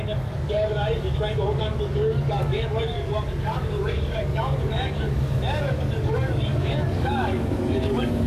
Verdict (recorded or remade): remade